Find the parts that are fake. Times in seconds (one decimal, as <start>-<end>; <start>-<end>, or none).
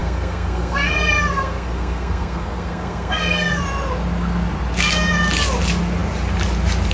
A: 0.0-3.6